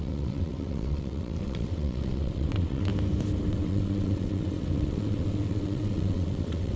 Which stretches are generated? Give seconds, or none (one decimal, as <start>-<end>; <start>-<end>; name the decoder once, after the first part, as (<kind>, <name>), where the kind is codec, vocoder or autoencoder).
0.0-2.9 (vocoder, WaveNeXt); 3.5-6.8